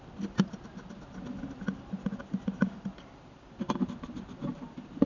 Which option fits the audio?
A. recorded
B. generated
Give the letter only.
A